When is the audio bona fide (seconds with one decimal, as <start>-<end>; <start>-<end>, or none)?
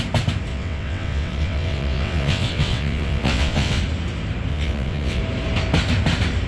0.0-0.5; 3.8-4.5; 5.2-6.5